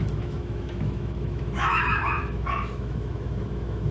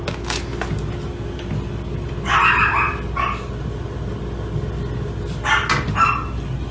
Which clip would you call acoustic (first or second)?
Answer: second